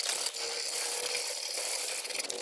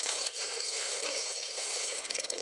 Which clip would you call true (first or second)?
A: first